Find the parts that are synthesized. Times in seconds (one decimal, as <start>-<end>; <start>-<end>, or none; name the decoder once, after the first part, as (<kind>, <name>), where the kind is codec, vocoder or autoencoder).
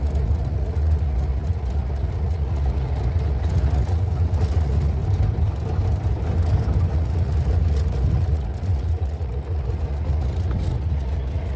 0.0-5.0 (vocoder, Vocos); 6.9-11.6